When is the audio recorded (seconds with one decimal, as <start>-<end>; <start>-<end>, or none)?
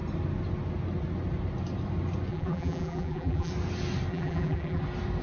0.0-2.3; 3.5-4.1; 4.8-5.2